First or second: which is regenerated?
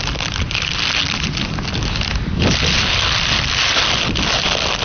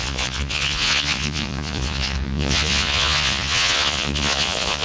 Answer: second